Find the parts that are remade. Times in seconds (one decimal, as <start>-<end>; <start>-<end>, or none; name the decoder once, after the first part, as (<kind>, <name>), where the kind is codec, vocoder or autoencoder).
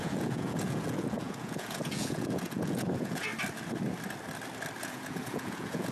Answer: 0.0-3.3 (vocoder, Vocos); 4.8-5.9